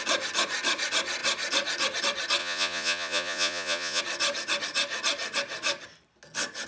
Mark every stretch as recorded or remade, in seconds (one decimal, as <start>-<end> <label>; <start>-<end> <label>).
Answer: 0.0-2.4 recorded; 2.4-4.0 remade; 4.0-6.7 recorded